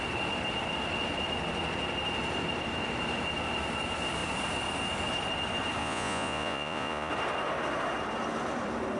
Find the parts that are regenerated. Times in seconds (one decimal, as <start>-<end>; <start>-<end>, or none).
5.8-7.1